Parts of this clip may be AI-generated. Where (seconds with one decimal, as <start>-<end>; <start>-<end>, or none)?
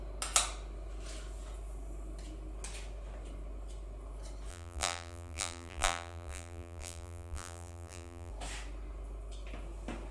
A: 4.5-8.3